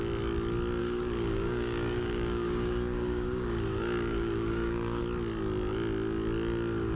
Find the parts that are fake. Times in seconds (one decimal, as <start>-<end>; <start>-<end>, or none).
0.8-5.0